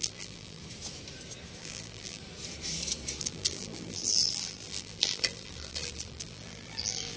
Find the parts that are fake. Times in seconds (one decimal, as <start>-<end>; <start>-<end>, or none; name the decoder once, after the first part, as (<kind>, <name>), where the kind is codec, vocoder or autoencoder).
0.0-0.6 (vocoder, BigVGAN v2); 1.6-2.2; 3.2-7.2